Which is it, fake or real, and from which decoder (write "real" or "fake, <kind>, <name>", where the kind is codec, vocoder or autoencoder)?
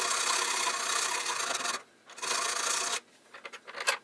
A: real